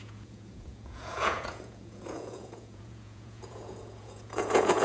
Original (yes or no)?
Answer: no